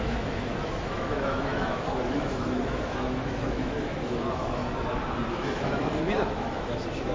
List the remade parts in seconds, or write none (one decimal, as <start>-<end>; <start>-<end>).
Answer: 0.0-4.6; 5.3-7.1